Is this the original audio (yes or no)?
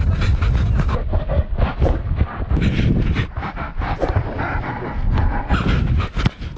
yes